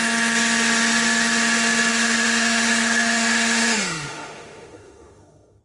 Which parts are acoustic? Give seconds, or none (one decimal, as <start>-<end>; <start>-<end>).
0.0-1.9